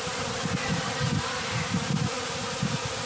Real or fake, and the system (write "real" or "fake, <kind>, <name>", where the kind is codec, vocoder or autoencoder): real